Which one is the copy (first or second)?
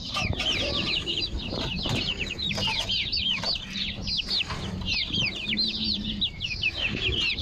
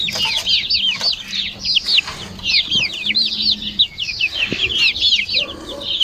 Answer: first